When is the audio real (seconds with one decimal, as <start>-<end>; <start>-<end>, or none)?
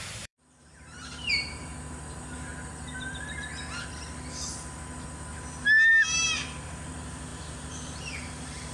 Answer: 1.7-5.9